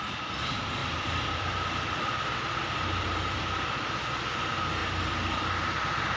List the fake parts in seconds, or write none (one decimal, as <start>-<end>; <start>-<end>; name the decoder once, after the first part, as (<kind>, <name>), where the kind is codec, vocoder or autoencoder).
0.8-4.1 (vocoder, BigVGAN v2)